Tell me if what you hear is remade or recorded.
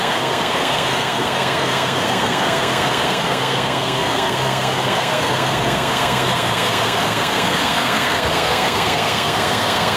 remade